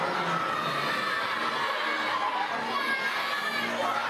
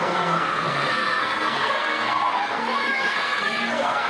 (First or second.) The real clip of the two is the first